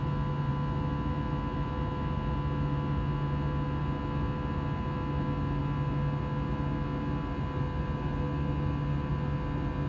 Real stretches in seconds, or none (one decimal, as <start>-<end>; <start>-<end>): 0.0-9.9